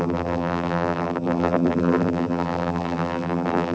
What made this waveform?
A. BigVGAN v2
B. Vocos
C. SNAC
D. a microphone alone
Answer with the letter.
A